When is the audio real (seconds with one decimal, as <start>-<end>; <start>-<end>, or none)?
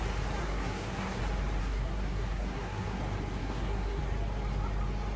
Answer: 0.0-0.4; 1.2-1.6; 3.0-3.4; 4.0-5.2